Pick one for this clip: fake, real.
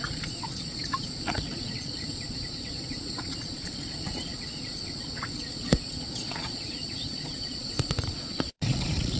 fake